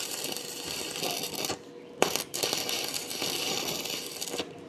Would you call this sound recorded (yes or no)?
no